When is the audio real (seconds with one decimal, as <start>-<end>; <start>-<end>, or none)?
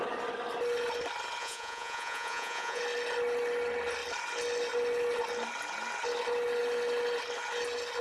0.0-1.4; 2.8-8.0